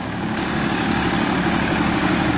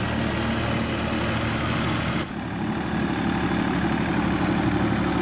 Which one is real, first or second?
second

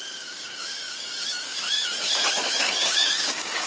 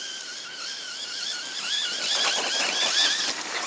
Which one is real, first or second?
second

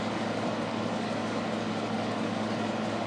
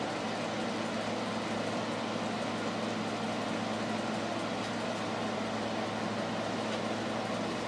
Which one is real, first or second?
second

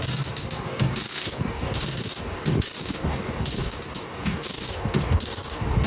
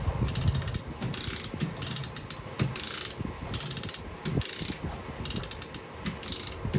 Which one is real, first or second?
second